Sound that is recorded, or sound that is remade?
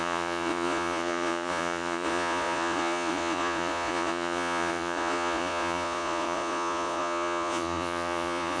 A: remade